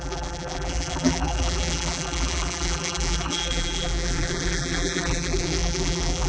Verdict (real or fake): fake